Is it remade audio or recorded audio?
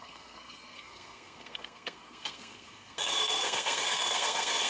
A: remade